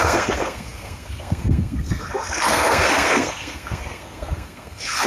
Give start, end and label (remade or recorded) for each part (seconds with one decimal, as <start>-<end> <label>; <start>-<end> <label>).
0.0-5.1 remade

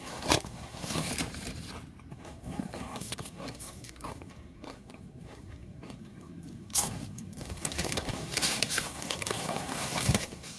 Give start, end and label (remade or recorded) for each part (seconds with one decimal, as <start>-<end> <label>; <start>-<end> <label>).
0.0-1.1 remade; 1.1-2.1 recorded; 2.1-10.6 remade

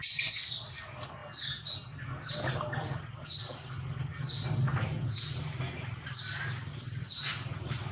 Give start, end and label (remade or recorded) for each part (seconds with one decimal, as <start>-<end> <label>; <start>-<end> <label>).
0.0-7.9 recorded